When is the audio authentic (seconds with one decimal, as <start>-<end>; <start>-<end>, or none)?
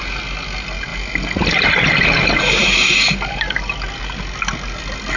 0.0-5.2